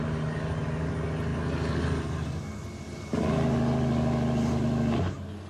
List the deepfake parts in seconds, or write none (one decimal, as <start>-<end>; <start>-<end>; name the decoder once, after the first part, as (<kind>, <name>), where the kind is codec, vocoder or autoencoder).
none